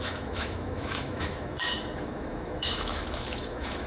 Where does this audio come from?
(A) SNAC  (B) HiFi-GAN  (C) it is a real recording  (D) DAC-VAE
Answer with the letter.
D